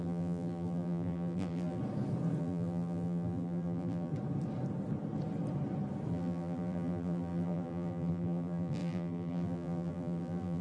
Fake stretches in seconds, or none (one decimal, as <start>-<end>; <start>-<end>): 0.0-1.8; 2.4-4.1; 6.1-10.6